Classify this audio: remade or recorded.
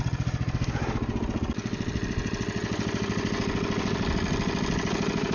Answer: recorded